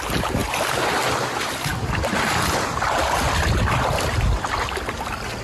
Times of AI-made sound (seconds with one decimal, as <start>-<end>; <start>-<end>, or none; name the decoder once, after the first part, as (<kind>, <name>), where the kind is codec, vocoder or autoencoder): none